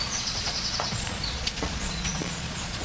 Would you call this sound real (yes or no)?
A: no